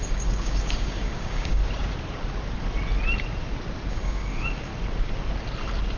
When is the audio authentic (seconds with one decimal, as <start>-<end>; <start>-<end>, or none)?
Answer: 1.6-3.9; 4.7-6.0